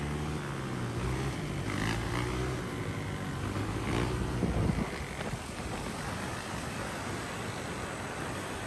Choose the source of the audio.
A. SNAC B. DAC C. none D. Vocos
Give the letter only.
C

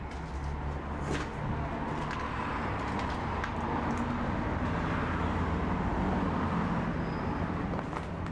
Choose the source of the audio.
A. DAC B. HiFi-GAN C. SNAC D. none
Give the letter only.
D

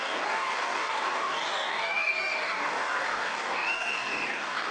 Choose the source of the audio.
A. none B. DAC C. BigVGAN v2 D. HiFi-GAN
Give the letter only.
B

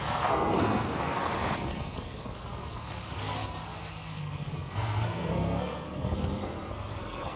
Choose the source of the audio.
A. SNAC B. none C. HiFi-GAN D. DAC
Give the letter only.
A